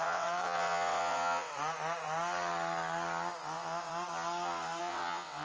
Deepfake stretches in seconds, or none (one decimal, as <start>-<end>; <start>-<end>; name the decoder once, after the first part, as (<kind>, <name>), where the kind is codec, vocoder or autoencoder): 0.0-1.5 (vocoder, WaveNeXt); 3.4-3.9; 4.8-5.4